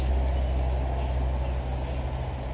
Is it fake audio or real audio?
real